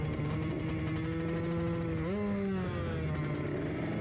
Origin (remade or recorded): recorded